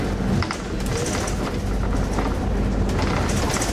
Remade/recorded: recorded